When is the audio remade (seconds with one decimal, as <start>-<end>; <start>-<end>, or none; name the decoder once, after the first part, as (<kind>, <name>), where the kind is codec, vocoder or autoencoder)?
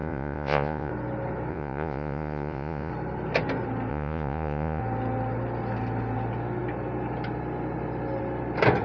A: 0.0-0.9 (vocoder, Vocos); 1.5-2.9; 3.9-4.8